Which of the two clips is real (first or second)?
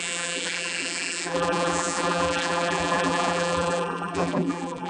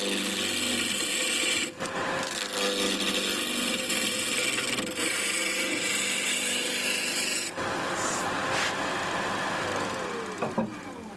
second